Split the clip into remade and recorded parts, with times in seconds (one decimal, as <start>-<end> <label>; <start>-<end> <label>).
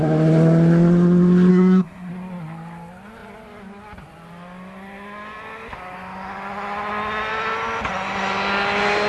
0.0-1.5 recorded; 1.5-2.1 remade; 2.1-9.1 recorded